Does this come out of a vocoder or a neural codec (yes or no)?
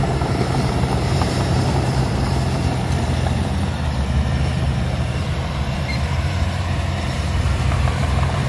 yes